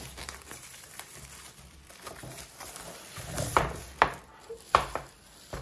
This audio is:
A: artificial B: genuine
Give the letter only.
A